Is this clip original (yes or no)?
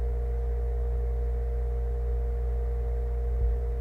yes